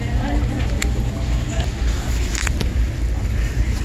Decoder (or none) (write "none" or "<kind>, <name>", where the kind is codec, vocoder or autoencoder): none